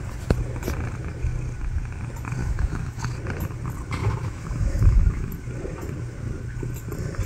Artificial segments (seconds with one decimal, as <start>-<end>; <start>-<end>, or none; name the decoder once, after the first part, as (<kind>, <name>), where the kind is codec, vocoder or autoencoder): 2.4-3.0 (autoencoder, DAC-VAE); 4.0-5.3